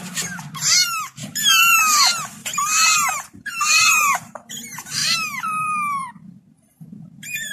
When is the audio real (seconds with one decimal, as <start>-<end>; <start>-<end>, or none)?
0.0-1.2; 1.8-2.4; 4.5-5.0; 6.1-7.5